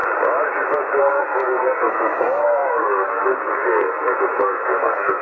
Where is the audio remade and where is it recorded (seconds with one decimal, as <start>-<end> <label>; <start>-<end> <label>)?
0.0-1.0 recorded; 1.0-5.2 remade